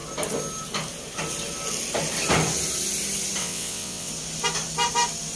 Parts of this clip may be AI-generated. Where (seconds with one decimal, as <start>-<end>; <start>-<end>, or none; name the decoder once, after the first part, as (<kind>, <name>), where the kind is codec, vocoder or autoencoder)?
3.4-4.1 (vocoder, WaveNeXt)